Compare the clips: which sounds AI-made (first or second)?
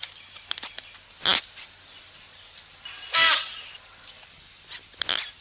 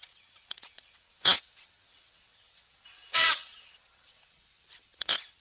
second